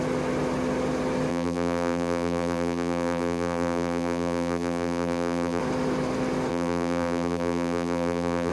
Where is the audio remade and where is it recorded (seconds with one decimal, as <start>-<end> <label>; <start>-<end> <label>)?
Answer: 0.0-1.3 recorded; 1.3-5.6 remade; 5.6-6.5 recorded; 6.5-8.5 remade